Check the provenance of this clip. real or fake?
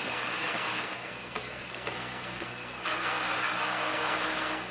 fake